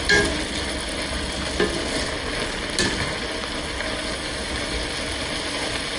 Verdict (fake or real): real